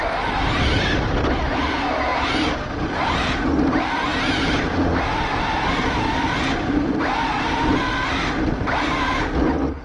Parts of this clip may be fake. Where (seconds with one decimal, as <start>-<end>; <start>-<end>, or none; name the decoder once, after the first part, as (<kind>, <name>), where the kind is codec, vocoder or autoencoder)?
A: none